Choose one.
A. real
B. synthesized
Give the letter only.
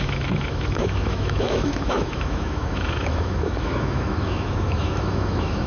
B